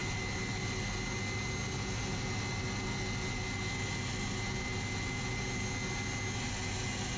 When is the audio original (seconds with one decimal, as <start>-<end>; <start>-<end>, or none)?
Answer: 0.0-7.2